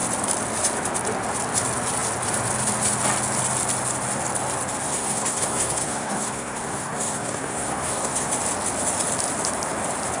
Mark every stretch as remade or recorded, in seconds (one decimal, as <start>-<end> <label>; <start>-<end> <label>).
0.0-4.8 recorded; 4.8-8.3 remade; 8.3-10.2 recorded